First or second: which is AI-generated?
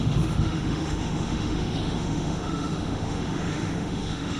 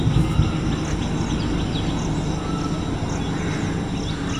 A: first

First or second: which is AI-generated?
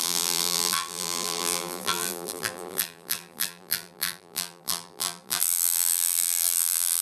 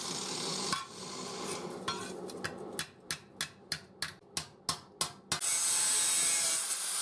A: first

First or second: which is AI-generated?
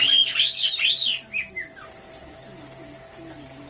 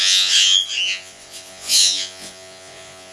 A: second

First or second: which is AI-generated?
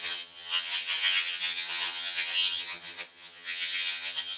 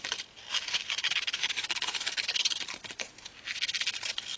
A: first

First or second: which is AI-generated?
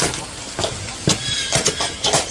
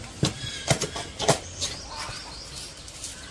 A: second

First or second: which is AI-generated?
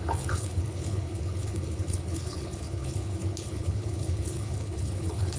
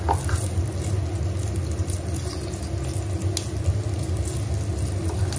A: first